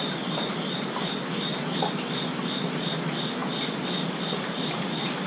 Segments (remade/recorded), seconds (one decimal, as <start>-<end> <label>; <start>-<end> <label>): 0.0-5.3 recorded